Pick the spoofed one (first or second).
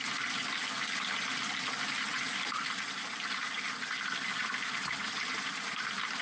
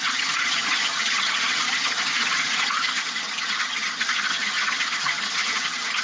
second